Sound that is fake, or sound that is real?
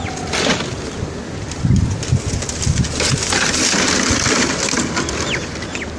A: real